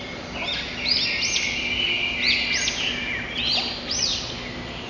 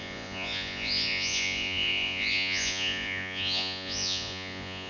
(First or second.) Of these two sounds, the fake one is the second